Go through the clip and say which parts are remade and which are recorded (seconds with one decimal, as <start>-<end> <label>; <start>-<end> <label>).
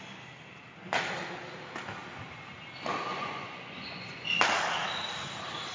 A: 0.0-3.1 recorded; 3.1-4.4 remade; 4.4-5.7 recorded